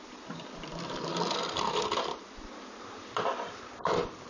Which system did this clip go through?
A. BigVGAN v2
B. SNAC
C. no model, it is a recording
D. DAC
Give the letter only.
A